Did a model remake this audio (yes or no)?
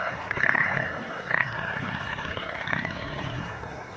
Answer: yes